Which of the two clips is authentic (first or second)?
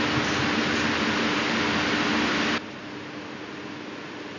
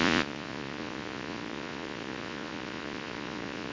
first